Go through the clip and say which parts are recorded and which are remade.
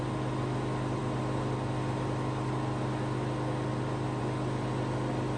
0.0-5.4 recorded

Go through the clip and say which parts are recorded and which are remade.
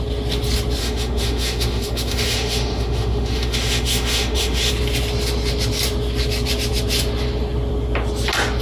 0.0-0.8 recorded; 0.8-4.7 remade; 4.7-8.6 recorded